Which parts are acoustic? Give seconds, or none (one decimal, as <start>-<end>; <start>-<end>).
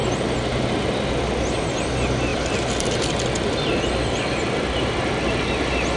0.0-6.0